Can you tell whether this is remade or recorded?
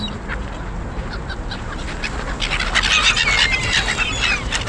recorded